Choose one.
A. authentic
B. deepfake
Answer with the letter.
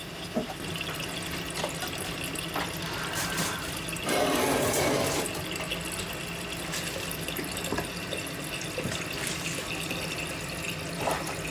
A